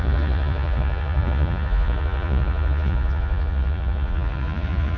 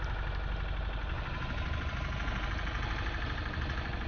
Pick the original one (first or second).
second